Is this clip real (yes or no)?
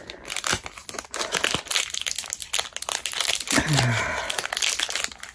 yes